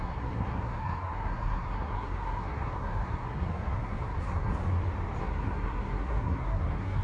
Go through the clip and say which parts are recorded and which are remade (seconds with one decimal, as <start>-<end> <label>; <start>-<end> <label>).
0.0-4.6 remade; 4.6-5.2 recorded; 5.2-7.0 remade